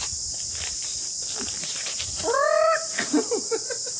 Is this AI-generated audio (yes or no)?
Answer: yes